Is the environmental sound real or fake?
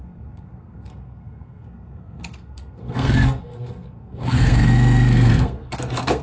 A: fake